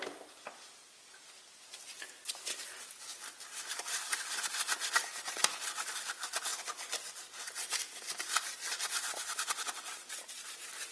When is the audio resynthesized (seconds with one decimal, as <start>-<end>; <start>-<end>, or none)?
none